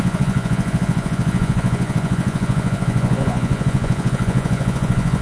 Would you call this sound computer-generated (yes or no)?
yes